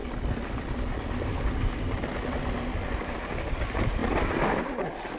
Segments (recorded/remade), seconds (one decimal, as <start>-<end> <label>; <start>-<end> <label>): 0.0-5.2 recorded

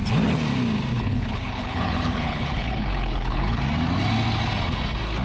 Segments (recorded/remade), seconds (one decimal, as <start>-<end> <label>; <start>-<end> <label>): 0.0-0.9 recorded; 0.9-3.6 remade; 3.6-5.2 recorded

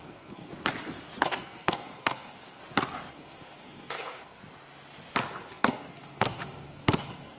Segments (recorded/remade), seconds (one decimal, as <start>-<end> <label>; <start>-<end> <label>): 0.0-0.5 remade; 0.5-1.2 recorded; 1.2-2.6 remade; 2.6-3.1 recorded; 3.1-4.4 remade; 4.4-5.5 recorded; 5.5-7.4 remade

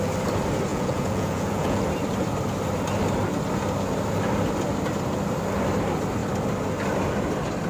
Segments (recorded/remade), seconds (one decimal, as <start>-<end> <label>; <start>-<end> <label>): 0.0-0.7 recorded; 0.7-1.8 remade; 1.8-7.7 recorded